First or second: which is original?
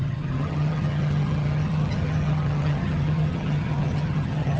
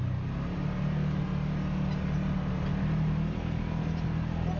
second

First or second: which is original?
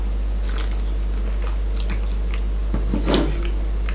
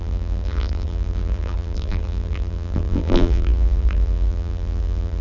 first